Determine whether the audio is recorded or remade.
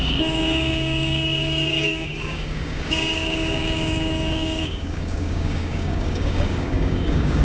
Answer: remade